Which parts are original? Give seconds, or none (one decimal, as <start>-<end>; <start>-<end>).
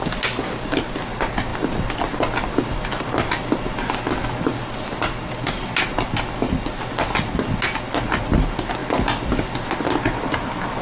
0.0-10.8